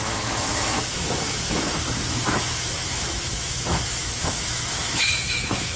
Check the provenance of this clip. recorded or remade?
remade